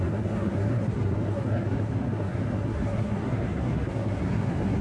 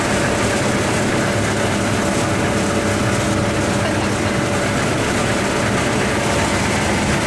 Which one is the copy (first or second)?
first